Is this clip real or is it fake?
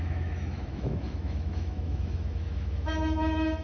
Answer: fake